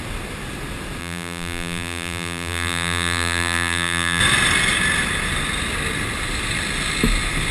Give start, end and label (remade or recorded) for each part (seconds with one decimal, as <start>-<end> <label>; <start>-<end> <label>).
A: 0.0-1.0 recorded; 1.0-4.2 remade; 4.2-7.5 recorded